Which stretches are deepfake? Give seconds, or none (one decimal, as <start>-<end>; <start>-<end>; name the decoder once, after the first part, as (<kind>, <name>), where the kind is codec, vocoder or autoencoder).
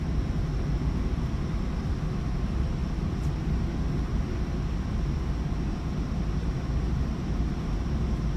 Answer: none